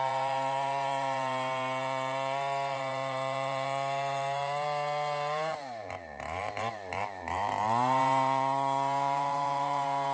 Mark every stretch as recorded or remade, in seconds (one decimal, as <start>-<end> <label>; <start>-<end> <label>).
0.0-10.1 remade